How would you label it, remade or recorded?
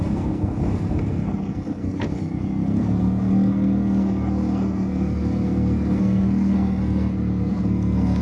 remade